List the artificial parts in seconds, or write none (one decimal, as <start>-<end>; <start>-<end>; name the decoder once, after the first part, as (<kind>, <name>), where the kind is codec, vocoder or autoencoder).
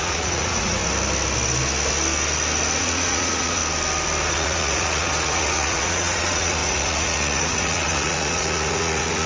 0.0-0.8 (vocoder, Vocos); 2.8-3.6; 4.3-9.3